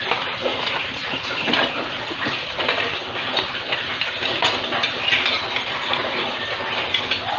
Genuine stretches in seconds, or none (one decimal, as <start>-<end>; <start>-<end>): 0.0-0.5; 2.3-5.7; 6.4-7.4